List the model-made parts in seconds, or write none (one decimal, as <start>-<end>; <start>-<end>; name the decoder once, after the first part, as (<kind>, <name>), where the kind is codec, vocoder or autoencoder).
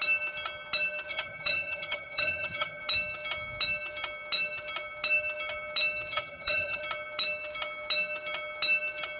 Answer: 1.1-2.8 (vocoder, HiFi-GAN); 6.1-6.8